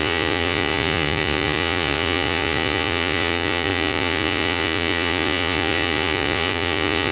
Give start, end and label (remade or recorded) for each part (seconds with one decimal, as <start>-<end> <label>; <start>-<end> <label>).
0.0-7.1 remade